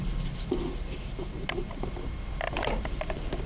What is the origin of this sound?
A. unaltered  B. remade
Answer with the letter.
A